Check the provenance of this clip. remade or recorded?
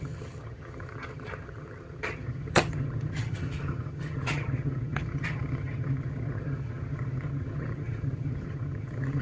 remade